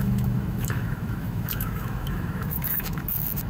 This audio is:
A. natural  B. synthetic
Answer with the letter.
B